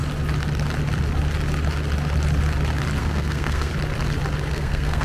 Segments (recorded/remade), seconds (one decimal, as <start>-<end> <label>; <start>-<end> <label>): 0.0-3.0 recorded; 3.0-3.7 remade; 3.7-4.5 recorded; 4.5-5.0 remade